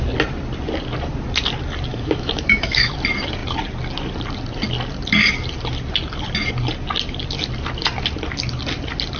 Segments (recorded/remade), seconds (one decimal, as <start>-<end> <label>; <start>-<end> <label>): 0.0-1.9 recorded; 1.9-2.9 remade; 2.9-9.2 recorded